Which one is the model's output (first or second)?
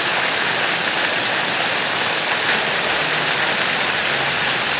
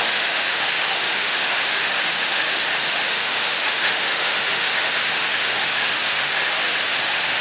second